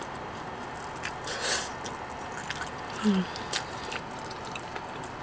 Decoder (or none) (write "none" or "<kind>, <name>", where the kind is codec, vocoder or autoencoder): none